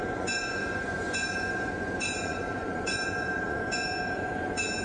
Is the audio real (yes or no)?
no